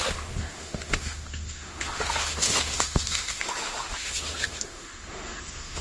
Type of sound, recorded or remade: remade